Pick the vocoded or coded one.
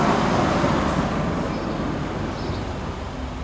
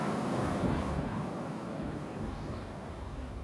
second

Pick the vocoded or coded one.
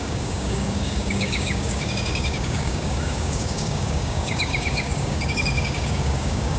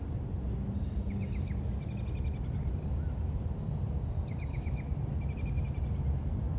first